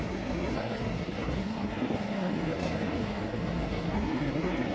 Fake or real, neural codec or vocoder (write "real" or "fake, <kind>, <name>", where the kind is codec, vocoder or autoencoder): fake, codec, SNAC